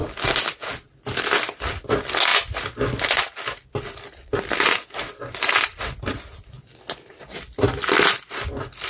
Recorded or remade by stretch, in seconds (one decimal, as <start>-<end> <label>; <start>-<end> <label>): 0.0-0.6 remade; 0.6-8.9 recorded